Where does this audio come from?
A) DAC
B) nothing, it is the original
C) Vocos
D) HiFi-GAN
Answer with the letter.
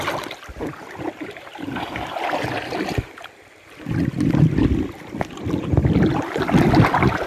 B